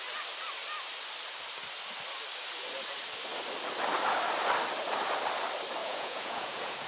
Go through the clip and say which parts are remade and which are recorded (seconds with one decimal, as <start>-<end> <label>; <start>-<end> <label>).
0.0-5.8 recorded; 5.8-6.9 remade